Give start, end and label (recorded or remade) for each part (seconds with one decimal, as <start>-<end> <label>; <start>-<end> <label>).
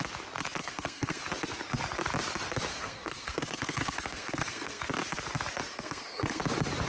0.0-0.6 recorded; 0.6-1.2 remade; 1.2-2.7 recorded; 2.7-4.8 remade; 4.8-5.7 recorded; 5.7-6.4 remade; 6.4-6.9 recorded